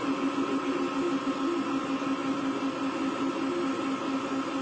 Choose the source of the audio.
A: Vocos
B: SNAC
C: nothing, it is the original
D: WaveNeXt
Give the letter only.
C